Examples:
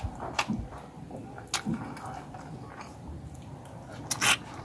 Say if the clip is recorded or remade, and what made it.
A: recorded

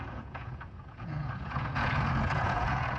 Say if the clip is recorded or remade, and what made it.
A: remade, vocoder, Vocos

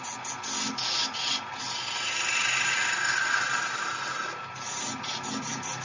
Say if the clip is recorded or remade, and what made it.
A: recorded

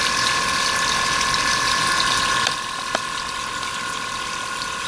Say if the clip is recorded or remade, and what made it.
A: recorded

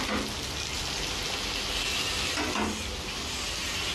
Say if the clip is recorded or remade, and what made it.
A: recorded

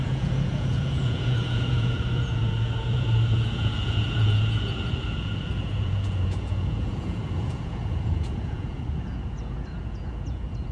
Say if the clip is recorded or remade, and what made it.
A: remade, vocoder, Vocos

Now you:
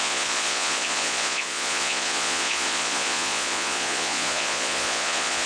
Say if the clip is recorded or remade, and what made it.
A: remade, vocoder, Vocos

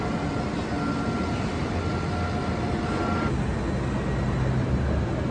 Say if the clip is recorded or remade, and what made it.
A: recorded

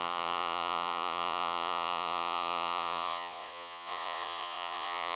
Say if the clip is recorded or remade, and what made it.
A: remade, vocoder, Vocos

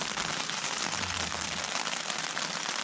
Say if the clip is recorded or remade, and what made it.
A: recorded